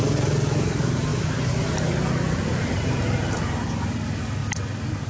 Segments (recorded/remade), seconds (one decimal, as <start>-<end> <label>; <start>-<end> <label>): 0.0-5.1 recorded